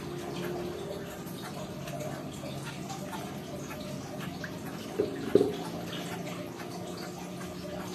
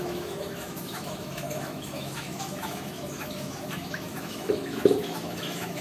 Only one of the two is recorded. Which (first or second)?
first